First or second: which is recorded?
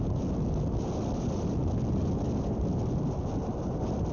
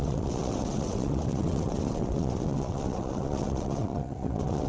first